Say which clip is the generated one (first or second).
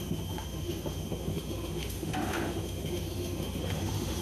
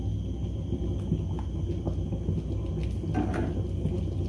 first